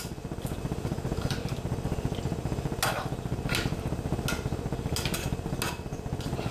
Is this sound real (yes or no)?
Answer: yes